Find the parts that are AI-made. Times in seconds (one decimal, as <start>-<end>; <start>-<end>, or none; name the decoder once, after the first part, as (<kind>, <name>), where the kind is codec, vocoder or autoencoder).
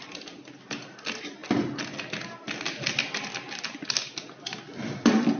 none